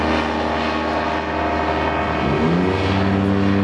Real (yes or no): yes